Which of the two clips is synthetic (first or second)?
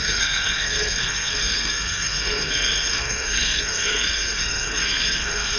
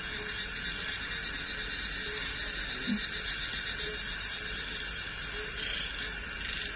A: first